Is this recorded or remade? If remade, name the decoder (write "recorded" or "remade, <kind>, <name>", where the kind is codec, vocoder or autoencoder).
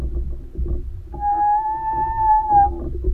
recorded